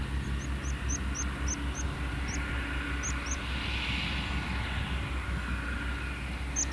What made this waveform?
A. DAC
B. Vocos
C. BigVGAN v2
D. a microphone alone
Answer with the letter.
D